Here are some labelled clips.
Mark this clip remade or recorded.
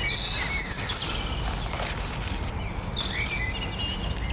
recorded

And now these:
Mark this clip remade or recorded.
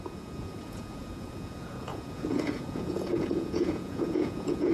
remade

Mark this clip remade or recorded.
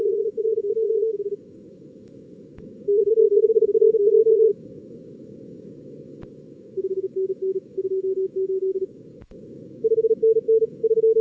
remade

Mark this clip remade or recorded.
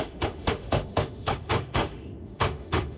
remade